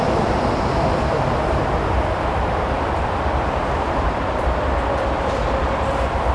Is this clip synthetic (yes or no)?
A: yes